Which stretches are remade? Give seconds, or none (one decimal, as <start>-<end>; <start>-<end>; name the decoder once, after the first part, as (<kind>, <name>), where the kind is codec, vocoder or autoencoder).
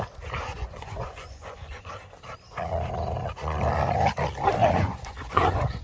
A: 0.5-1.9 (vocoder, Vocos); 4.6-5.8